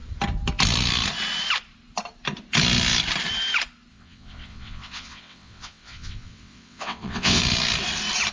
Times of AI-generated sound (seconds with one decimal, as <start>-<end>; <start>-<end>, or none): 3.9-7.4